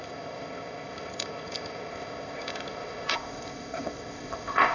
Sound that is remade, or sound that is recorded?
remade